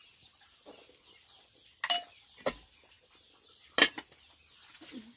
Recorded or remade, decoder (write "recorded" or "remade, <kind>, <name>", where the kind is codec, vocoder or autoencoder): recorded